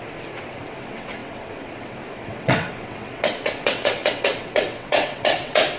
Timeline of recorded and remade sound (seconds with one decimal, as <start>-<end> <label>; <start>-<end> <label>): 0.0-5.8 remade